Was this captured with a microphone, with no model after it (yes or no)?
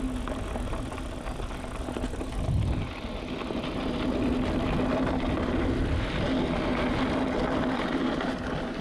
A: yes